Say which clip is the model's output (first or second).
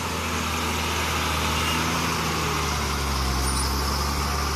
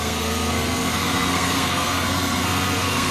second